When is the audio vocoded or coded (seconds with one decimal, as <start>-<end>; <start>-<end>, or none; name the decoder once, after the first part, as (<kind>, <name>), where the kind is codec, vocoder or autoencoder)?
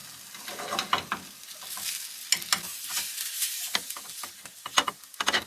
none